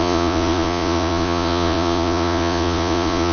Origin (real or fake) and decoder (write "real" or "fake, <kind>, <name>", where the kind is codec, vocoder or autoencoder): fake, vocoder, Vocos